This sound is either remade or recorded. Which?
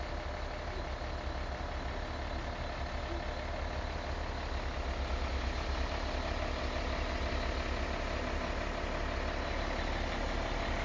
recorded